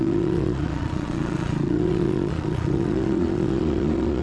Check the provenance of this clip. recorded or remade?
remade